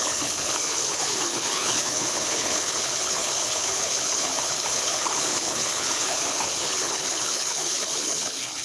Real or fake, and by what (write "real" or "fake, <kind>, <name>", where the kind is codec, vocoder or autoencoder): fake, codec, HILCodec